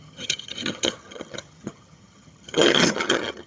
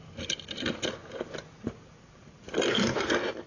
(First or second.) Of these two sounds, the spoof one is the first